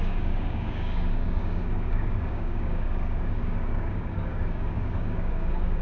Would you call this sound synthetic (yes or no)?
yes